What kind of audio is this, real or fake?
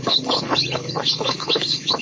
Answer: fake